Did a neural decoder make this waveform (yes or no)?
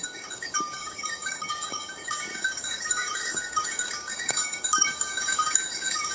yes